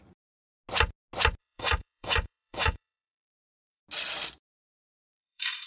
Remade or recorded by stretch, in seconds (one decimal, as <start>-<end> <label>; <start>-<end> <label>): 0.0-1.4 recorded; 1.4-3.8 remade; 3.8-5.1 recorded; 5.1-5.7 remade